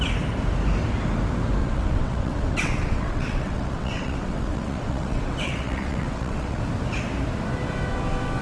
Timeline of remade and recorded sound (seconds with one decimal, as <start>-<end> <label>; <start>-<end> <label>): 0.0-1.6 recorded; 1.6-6.6 remade; 6.6-8.4 recorded